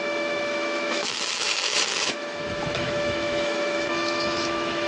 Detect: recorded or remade remade